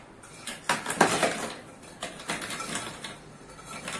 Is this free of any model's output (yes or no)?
yes